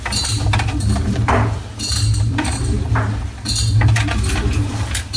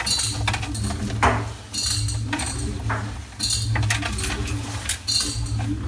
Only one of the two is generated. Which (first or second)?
first